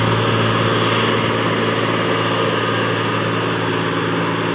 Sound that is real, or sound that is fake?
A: real